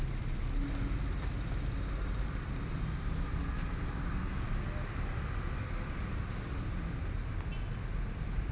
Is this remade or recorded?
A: recorded